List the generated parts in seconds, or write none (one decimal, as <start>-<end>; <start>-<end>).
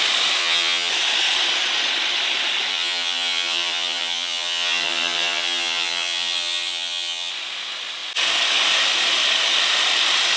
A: 0.4-0.9; 2.7-7.3